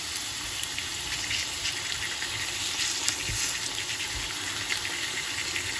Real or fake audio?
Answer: real